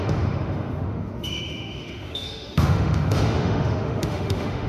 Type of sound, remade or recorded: remade